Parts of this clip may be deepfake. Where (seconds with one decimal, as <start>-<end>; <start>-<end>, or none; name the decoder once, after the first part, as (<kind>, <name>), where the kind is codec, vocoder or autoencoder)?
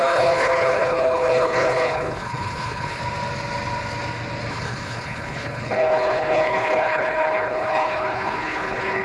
0.0-3.0 (codec, HILCodec); 4.5-9.0